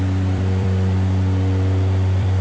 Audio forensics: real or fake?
fake